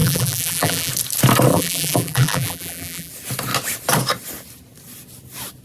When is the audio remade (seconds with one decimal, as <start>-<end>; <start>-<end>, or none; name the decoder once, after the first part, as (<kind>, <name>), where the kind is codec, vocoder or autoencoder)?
0.0-0.9 (vocoder, BigVGAN v2); 1.5-3.1